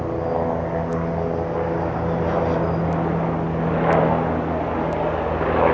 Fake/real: real